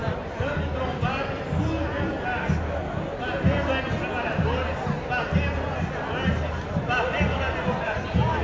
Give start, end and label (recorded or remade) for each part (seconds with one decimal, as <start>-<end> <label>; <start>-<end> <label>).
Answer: 0.0-8.4 recorded